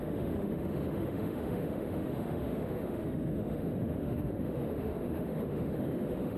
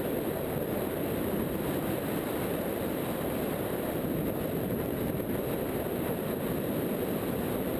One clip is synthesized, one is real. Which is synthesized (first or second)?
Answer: first